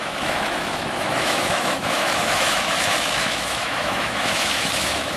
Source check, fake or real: fake